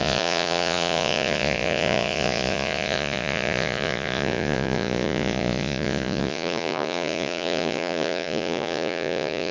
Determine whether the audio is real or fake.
fake